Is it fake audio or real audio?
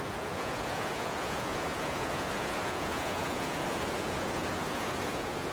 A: fake